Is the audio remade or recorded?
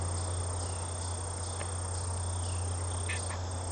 recorded